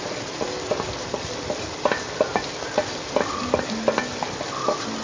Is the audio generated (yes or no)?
no